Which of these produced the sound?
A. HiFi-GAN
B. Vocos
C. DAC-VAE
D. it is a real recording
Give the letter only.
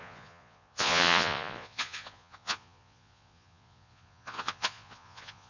B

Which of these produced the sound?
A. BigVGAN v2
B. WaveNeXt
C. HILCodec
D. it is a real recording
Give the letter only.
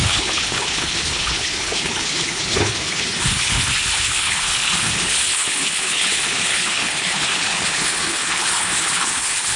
C